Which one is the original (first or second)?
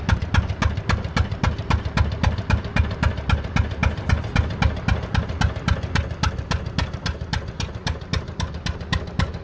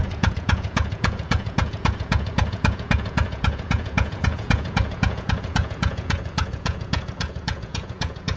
first